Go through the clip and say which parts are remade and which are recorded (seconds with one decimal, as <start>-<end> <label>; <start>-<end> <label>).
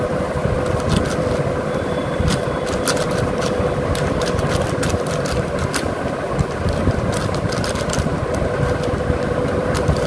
0.0-0.4 remade; 0.4-1.1 recorded; 1.1-8.2 remade; 8.2-9.6 recorded; 9.6-10.1 remade